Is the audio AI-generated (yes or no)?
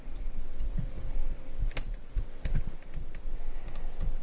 no